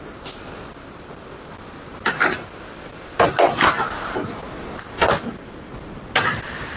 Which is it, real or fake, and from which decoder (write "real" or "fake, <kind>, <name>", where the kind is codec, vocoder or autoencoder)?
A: real